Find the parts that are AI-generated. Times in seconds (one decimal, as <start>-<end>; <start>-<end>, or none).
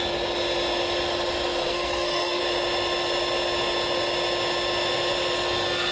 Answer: 1.6-2.4